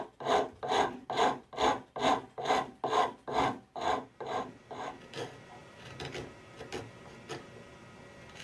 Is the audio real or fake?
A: real